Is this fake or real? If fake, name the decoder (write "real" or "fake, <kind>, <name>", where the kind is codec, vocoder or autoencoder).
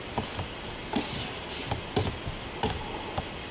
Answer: real